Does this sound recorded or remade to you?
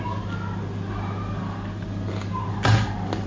recorded